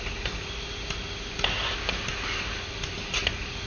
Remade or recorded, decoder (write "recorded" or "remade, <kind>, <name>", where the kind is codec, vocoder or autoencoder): recorded